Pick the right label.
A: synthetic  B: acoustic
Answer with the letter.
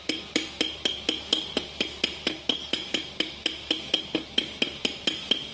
B